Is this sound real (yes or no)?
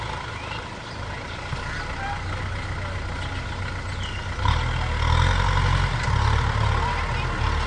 yes